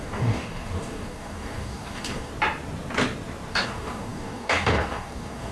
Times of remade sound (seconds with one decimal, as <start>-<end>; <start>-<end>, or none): 0.0-2.3; 3.5-5.5